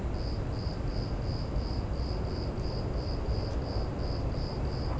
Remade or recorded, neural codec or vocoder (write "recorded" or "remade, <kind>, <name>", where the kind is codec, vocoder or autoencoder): recorded